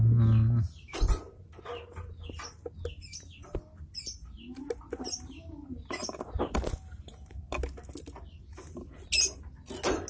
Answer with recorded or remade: recorded